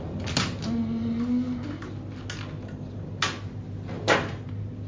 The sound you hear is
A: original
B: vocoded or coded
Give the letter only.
A